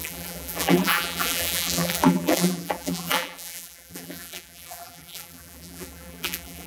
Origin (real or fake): fake